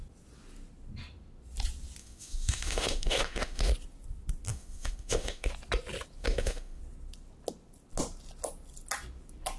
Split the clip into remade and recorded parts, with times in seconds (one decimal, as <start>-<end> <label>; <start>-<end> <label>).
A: 0.0-2.0 recorded; 2.0-3.7 remade; 3.7-4.5 recorded; 4.5-5.5 remade; 5.5-6.2 recorded; 6.2-6.8 remade; 6.8-9.6 recorded

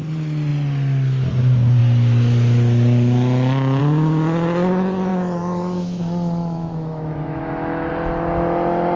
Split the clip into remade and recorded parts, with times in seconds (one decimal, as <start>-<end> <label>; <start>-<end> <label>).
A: 0.0-5.1 recorded; 5.1-7.9 remade; 7.9-9.0 recorded

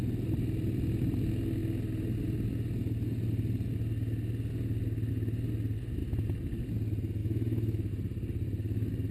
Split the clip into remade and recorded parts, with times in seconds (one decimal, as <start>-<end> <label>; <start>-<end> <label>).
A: 0.0-7.2 recorded; 7.2-7.9 remade; 7.9-9.1 recorded

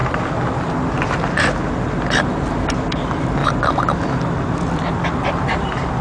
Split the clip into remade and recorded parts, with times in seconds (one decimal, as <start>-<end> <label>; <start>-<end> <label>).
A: 0.0-6.0 recorded

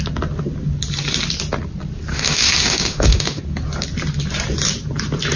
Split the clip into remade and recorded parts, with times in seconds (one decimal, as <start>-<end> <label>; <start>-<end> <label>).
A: 0.0-2.1 recorded; 2.1-3.4 remade; 3.4-5.4 recorded

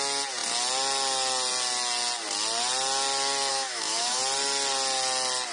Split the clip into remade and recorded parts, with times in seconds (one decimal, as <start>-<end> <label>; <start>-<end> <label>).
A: 0.0-3.5 recorded; 3.5-4.2 remade; 4.2-5.5 recorded

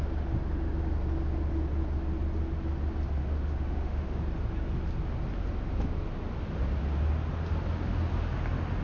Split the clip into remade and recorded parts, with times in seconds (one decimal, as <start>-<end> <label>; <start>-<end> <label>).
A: 0.0-3.2 recorded; 3.2-4.2 remade; 4.2-8.8 recorded